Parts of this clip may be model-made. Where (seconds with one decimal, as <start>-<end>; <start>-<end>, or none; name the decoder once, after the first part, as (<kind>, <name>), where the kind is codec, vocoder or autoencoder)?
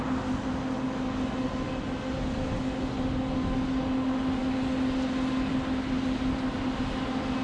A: none